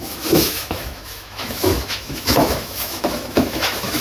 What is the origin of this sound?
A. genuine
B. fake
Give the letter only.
B